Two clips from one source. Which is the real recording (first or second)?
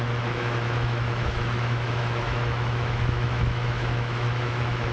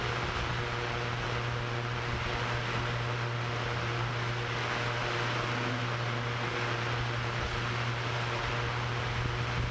second